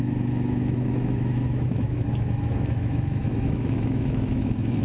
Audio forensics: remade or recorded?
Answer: remade